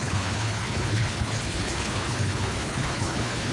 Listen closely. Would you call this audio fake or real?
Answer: fake